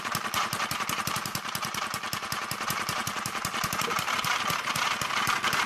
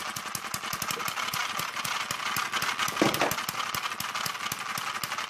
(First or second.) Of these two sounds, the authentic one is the second